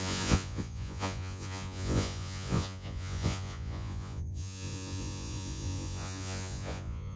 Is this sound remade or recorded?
remade